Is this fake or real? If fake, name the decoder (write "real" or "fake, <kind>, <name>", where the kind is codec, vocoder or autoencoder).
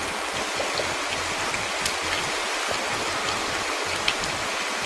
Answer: real